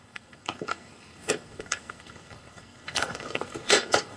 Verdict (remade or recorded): remade